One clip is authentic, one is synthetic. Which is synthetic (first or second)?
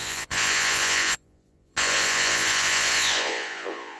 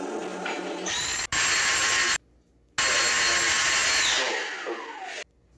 first